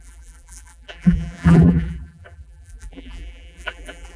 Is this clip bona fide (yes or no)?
no